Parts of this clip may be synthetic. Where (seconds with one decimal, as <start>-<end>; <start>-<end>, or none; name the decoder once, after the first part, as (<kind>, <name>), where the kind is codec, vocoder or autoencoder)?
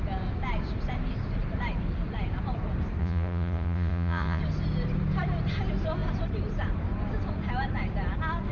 3.0-4.4 (vocoder, Vocos)